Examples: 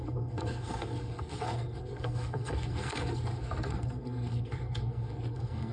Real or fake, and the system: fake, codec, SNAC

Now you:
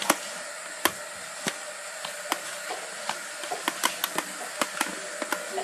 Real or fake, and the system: real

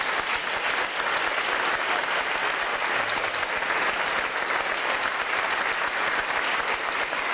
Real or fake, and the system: real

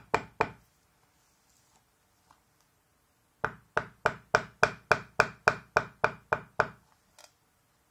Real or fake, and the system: real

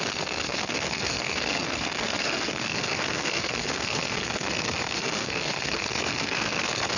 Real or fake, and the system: fake, codec, SNAC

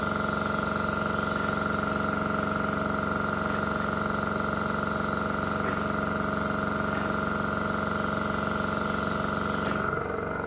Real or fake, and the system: real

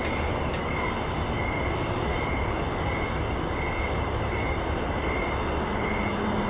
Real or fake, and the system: real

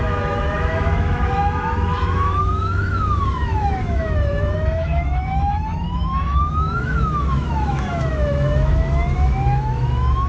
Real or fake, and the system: fake, autoencoder, DAC-VAE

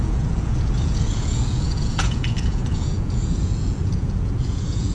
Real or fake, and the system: fake, vocoder, Vocos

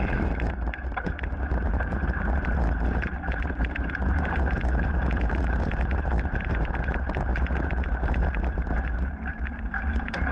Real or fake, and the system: fake, vocoder, BigVGAN v2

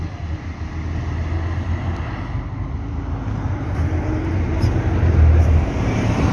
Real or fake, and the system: real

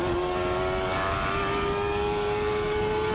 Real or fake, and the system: fake, codec, DAC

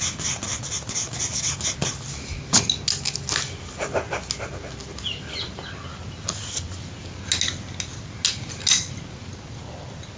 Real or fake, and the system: real